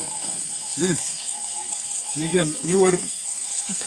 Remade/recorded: remade